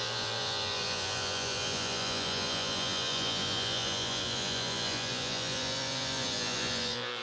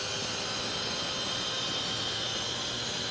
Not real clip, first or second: first